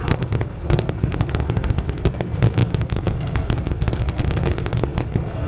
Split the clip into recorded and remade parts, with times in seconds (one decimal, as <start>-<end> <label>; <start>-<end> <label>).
0.0-5.5 remade